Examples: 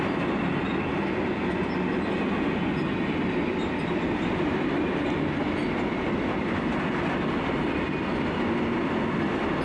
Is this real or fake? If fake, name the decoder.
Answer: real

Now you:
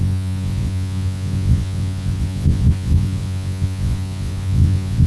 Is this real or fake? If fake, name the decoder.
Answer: fake, vocoder, Vocos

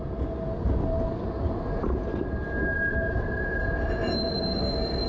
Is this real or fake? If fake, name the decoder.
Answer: real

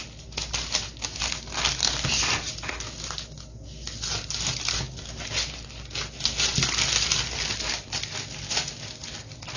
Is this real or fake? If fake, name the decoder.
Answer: real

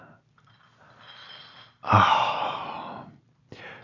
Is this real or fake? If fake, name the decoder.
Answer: real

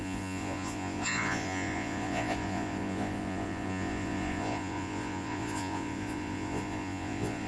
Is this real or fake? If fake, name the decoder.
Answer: fake, vocoder, Vocos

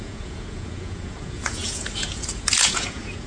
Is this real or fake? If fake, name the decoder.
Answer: fake, vocoder, Vocos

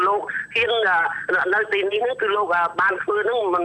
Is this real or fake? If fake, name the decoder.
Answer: real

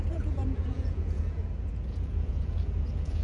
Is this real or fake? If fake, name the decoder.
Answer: fake, vocoder, Vocos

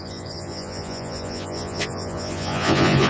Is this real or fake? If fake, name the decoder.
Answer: fake, vocoder, Vocos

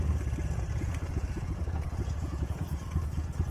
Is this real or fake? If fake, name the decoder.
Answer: fake, vocoder, Vocos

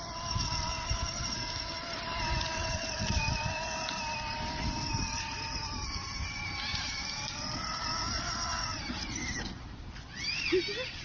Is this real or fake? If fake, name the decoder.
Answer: real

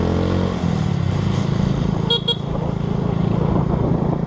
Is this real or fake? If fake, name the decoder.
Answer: real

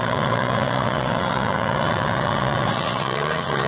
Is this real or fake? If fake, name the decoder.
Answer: fake, vocoder, Vocos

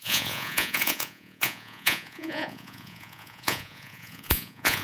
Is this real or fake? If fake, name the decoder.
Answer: fake, vocoder, Vocos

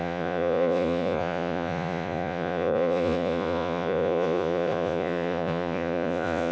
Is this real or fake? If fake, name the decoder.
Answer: fake, vocoder, Vocos